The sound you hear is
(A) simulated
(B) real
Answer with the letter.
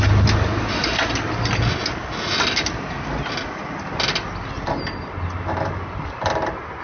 B